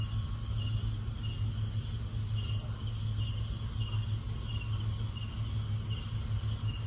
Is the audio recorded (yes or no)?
yes